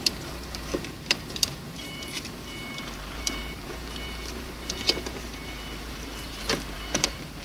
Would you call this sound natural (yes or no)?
no